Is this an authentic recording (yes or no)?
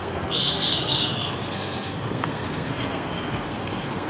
no